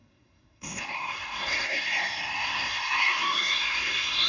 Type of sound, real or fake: fake